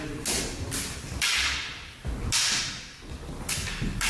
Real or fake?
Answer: real